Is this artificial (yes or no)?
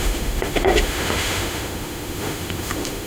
yes